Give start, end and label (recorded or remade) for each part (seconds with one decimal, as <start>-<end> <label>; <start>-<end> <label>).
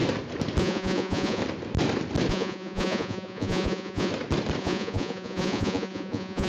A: 0.0-0.6 recorded; 0.6-1.4 remade; 1.4-2.3 recorded; 2.3-4.1 remade; 4.1-4.6 recorded; 4.6-6.5 remade